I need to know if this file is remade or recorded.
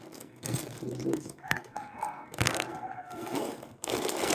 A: remade